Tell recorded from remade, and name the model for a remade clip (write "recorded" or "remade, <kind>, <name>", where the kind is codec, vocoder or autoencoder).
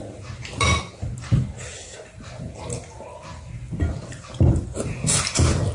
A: recorded